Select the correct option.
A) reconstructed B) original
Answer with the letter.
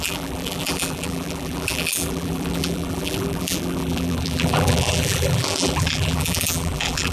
A